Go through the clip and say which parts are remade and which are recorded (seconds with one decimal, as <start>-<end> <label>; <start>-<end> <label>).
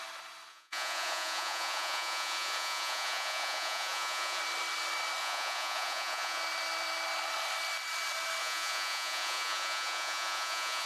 0.0-0.5 recorded; 0.5-4.4 remade; 4.4-5.2 recorded; 5.2-6.4 remade; 6.4-8.4 recorded; 8.4-10.9 remade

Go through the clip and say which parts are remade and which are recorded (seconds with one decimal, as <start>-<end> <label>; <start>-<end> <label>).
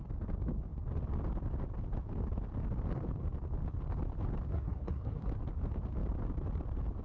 0.0-4.5 recorded; 4.5-5.3 remade; 5.3-7.0 recorded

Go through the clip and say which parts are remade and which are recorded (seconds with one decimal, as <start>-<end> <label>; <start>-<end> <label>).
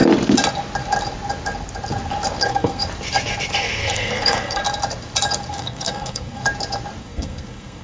0.0-2.4 recorded; 2.4-2.8 remade; 2.8-3.6 recorded; 3.6-4.6 remade; 4.6-5.5 recorded; 5.5-6.4 remade; 6.4-7.0 recorded; 7.0-7.8 remade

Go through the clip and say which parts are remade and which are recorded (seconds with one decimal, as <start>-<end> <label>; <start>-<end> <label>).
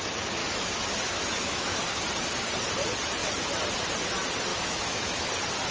0.0-0.4 recorded; 0.4-1.9 remade; 1.9-4.5 recorded; 4.5-5.3 remade; 5.3-5.7 recorded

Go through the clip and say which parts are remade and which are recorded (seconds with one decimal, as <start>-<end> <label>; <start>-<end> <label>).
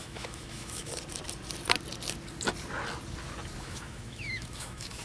0.0-0.9 remade; 0.9-3.6 recorded; 3.6-5.0 remade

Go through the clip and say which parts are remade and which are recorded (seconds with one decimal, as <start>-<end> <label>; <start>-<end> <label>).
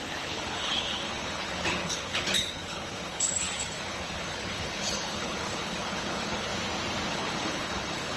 0.0-6.5 remade; 6.5-7.1 recorded; 7.1-8.2 remade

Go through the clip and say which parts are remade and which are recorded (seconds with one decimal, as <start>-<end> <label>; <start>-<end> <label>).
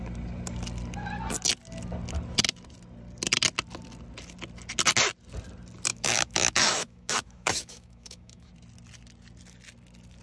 0.0-5.9 recorded; 5.9-8.5 remade; 8.5-10.2 recorded